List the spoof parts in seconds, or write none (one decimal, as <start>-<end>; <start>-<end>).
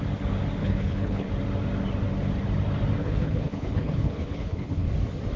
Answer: 0.6-1.3; 3.0-4.9